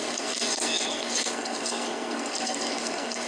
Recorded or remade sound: remade